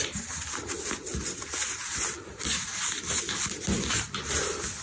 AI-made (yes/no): no